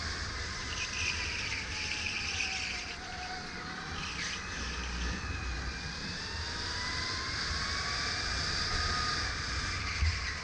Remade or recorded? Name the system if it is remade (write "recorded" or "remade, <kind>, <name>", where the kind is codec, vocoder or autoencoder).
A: recorded